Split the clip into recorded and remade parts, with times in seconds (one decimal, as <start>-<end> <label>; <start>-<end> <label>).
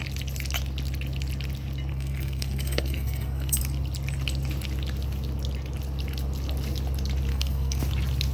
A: 0.0-1.9 recorded; 1.9-3.6 remade; 3.6-7.3 recorded; 7.3-7.8 remade; 7.8-8.3 recorded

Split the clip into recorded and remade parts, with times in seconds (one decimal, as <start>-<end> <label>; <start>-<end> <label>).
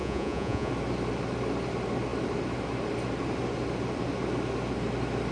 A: 0.0-0.7 remade; 0.7-5.3 recorded